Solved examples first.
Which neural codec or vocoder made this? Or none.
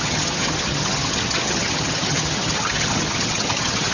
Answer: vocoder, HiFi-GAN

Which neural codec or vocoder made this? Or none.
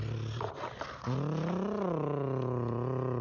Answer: none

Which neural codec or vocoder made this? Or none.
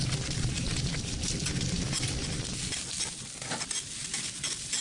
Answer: none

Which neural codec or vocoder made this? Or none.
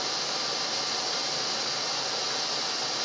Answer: none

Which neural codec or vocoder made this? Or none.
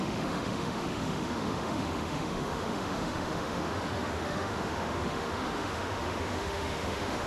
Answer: autoencoder, DAC-VAE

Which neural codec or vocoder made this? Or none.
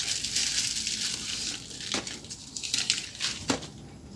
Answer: none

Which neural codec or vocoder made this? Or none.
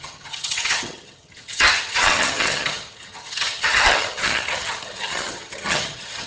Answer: vocoder, HiFi-GAN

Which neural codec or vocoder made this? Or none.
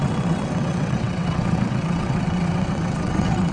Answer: vocoder, WaveNeXt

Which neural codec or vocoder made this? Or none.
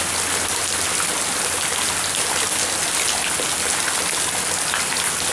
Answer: none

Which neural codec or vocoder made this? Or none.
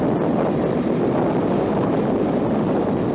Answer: none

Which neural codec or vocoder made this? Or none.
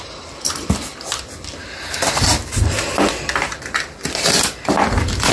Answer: vocoder, BigVGAN v2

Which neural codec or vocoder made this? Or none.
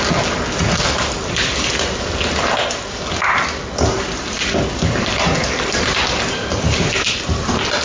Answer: none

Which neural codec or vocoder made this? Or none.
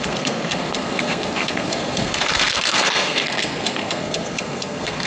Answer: codec, SNAC